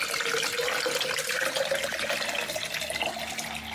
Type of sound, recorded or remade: recorded